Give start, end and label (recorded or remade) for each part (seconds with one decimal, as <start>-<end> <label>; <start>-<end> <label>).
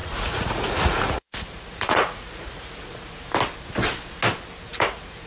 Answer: 0.0-3.2 remade; 3.2-4.7 recorded; 4.7-5.3 remade